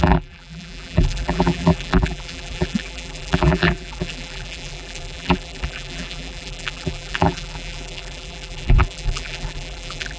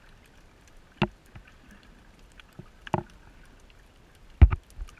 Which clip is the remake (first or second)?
first